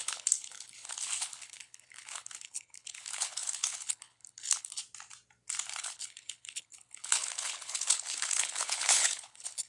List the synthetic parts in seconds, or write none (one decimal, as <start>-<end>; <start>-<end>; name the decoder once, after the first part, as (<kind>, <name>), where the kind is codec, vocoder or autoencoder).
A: 0.0-4.8 (codec, HILCodec); 5.8-9.7